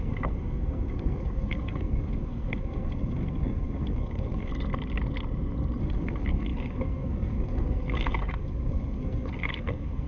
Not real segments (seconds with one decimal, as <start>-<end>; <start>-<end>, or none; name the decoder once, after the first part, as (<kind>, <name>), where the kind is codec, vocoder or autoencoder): 0.0-4.5 (codec, SNAC); 5.8-10.1